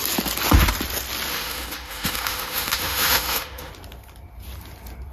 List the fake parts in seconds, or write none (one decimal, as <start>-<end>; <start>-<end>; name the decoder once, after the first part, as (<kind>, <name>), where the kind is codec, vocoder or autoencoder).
1.3-3.7 (autoencoder, DAC-VAE)